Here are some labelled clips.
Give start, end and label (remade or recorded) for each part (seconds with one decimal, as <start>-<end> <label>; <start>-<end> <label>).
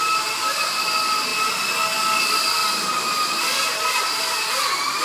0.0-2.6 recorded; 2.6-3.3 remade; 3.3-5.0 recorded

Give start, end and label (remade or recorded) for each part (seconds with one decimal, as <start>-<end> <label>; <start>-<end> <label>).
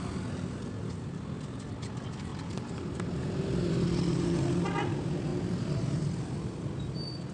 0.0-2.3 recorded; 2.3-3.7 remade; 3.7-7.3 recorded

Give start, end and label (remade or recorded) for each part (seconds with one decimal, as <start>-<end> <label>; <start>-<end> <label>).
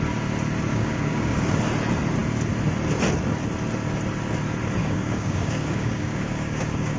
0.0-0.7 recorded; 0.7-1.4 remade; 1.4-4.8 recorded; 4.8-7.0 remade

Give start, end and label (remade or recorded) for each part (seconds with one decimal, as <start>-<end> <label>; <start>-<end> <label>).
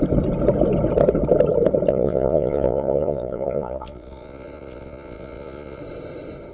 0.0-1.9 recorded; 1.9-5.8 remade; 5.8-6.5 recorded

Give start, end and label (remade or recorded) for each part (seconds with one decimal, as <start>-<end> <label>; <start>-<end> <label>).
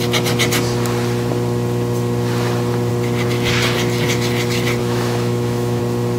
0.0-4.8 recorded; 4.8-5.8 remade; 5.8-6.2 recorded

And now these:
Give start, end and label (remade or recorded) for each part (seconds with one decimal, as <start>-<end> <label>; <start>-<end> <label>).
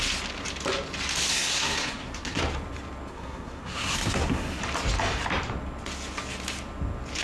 0.0-1.3 recorded; 1.3-2.4 remade; 2.4-3.1 recorded; 3.1-4.6 remade; 4.6-7.2 recorded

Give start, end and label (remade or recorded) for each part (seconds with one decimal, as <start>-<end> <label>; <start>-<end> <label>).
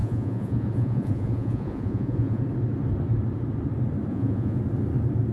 0.0-2.4 remade; 2.4-4.1 recorded; 4.1-4.6 remade; 4.6-5.3 recorded